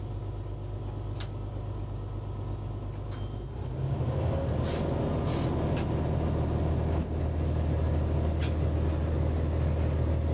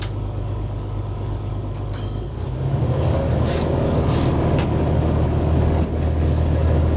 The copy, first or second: second